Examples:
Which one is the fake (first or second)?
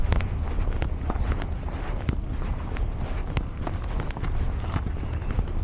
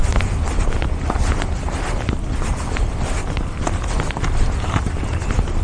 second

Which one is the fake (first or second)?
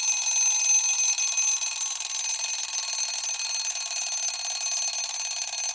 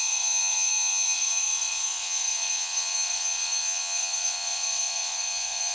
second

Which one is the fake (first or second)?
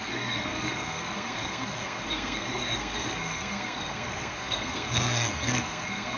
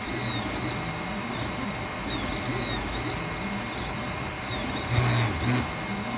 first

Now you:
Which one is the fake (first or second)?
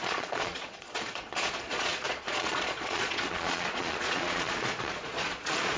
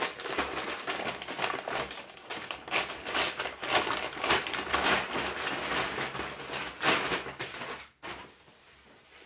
first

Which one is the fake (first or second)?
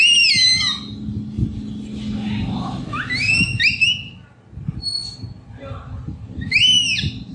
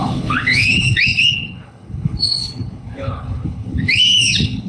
second